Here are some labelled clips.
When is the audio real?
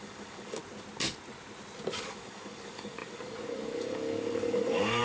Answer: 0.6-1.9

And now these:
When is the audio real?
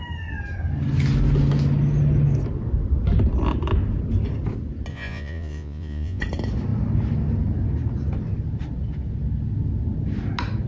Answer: 0.0-4.9; 6.2-10.7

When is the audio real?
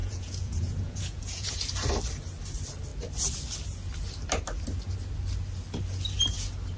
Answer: 1.5-6.8